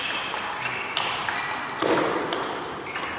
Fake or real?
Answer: real